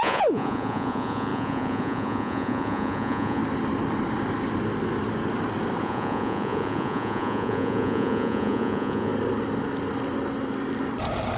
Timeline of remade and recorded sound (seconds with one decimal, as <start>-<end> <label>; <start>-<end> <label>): 0.0-3.4 remade; 3.4-5.8 recorded; 5.8-9.1 remade; 9.1-11.4 recorded